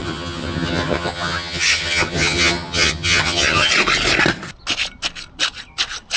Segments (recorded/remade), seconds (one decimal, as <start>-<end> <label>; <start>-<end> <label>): 0.0-3.7 remade; 3.7-6.2 recorded